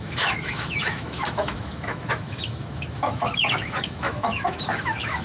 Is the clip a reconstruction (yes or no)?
yes